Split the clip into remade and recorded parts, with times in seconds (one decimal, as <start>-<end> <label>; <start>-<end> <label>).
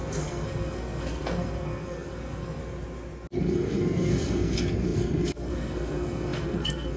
0.0-2.6 remade; 2.6-3.4 recorded; 3.4-7.0 remade